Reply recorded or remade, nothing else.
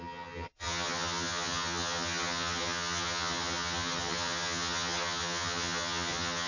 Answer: remade